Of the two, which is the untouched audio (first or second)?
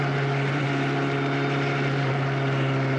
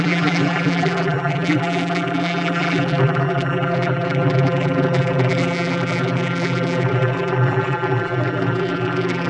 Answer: first